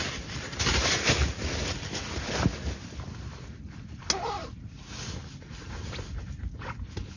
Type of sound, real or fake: real